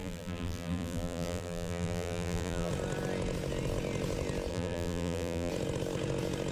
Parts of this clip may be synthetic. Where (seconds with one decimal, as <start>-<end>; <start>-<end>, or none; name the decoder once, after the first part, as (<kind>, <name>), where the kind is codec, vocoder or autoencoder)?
0.0-2.7 (vocoder, BigVGAN v2); 4.5-5.5